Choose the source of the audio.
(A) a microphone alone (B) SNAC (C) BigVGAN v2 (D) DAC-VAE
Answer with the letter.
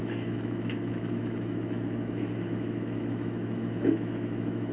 D